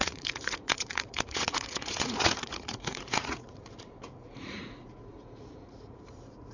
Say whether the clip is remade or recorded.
remade